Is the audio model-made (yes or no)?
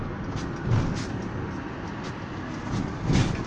no